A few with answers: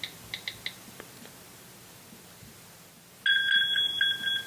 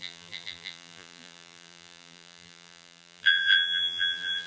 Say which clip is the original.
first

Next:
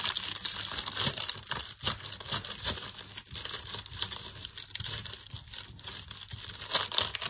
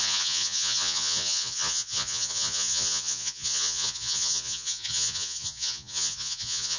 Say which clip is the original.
first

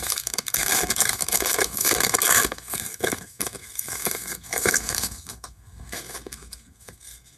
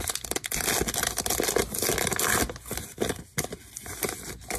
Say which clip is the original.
second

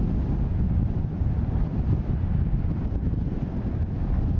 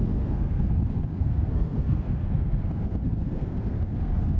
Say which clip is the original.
first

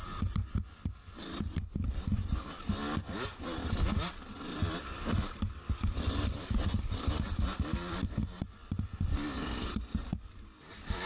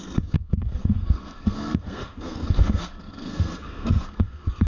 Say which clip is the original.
first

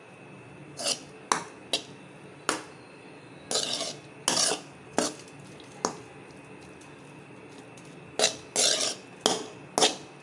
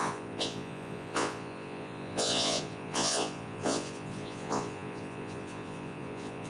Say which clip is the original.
first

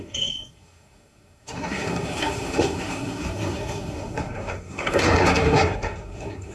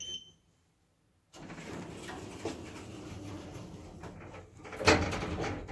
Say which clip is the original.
second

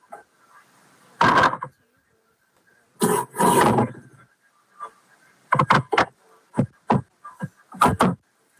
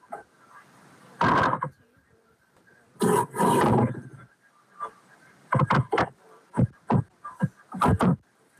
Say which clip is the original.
first